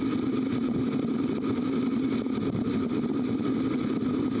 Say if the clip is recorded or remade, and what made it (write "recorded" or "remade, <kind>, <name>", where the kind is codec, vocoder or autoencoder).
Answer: recorded